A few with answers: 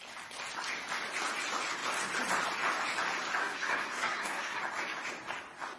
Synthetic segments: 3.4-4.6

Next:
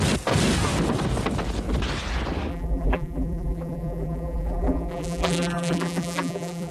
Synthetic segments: 2.5-6.7

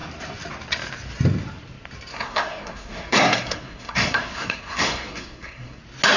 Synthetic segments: 2.1-5.8

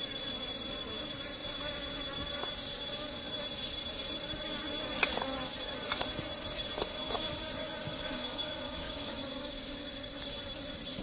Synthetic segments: 7.9-10.1

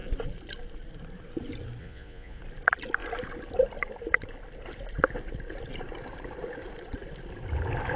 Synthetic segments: 1.8-2.4

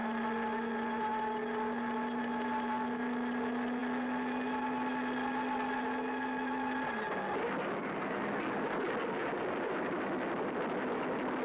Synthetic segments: none